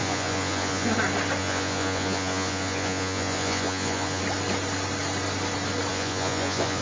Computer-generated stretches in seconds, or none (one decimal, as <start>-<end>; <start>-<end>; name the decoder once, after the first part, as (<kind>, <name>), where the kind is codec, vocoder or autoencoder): 0.0-0.9 (vocoder, Vocos); 1.4-4.2; 5.9-6.8